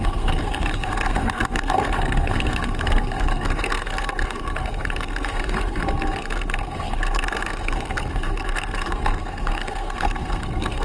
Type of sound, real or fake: fake